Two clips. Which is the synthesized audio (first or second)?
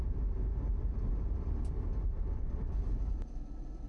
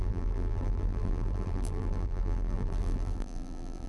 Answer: second